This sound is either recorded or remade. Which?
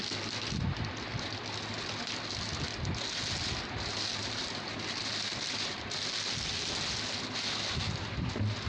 recorded